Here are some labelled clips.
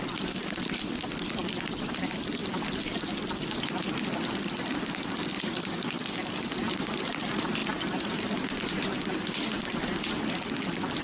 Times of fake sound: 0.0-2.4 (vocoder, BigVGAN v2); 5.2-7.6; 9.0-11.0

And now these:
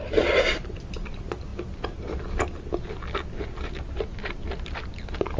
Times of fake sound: none